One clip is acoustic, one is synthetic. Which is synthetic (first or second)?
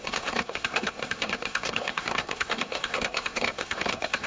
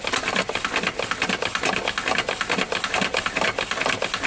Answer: first